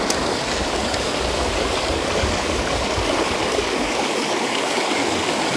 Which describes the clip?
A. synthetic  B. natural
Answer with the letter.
A